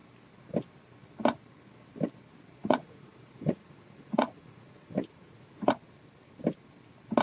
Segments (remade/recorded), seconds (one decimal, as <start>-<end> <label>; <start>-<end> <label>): 0.0-2.6 recorded; 2.6-5.7 remade; 5.7-7.2 recorded